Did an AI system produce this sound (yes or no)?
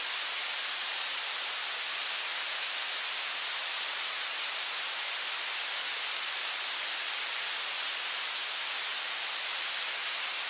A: no